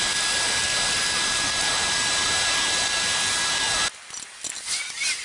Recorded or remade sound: recorded